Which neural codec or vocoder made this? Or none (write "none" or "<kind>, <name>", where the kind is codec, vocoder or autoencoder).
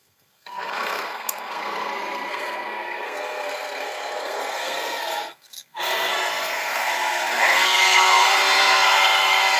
codec, SNAC